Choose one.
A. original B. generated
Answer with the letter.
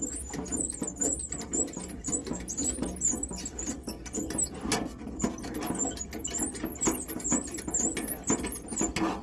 A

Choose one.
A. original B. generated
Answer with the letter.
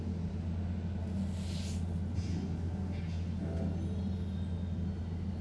A